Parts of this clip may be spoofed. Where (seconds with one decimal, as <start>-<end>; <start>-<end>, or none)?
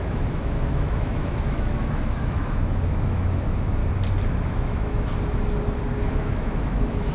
0.0-3.8; 4.5-5.1; 6.0-7.1